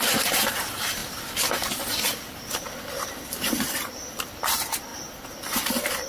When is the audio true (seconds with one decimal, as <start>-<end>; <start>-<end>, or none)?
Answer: 0.0-6.1